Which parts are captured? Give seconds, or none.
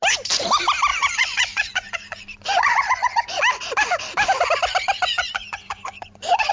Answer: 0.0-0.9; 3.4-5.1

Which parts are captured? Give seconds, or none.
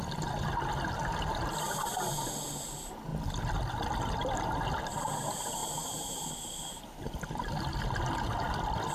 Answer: 0.0-8.9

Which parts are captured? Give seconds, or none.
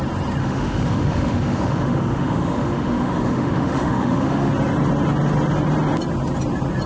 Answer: 0.0-0.4; 4.5-6.9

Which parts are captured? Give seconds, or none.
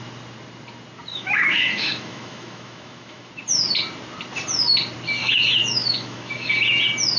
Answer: 0.0-1.1; 3.3-5.2; 6.8-7.2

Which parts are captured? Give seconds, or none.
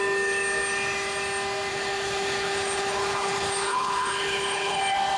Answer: 0.0-1.7; 4.8-5.2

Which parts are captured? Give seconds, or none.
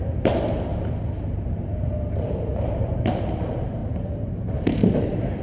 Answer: none